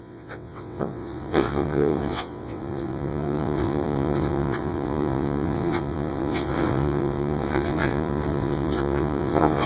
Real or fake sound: fake